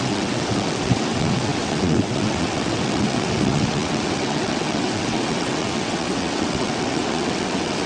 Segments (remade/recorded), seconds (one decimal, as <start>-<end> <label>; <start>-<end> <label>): 0.0-7.9 remade